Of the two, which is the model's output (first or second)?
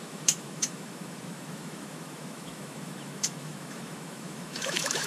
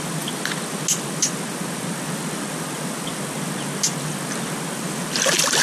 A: first